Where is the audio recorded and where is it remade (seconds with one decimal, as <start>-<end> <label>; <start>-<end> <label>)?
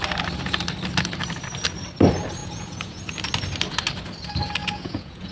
0.0-2.4 recorded; 2.4-3.0 remade; 3.0-4.6 recorded; 4.6-5.3 remade